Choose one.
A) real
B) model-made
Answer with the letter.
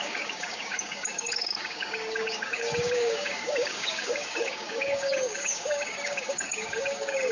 B